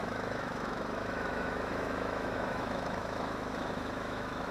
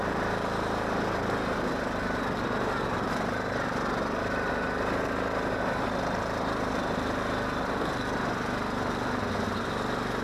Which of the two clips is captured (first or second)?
second